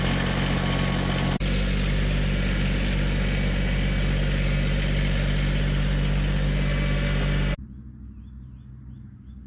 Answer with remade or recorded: recorded